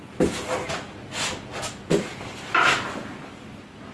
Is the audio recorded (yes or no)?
yes